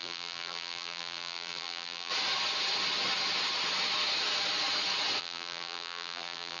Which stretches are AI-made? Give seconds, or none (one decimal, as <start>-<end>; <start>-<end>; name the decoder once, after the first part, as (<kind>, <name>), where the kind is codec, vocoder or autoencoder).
0.0-2.1 (vocoder, BigVGAN v2); 5.2-6.6